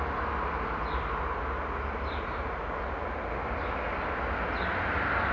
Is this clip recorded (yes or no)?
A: yes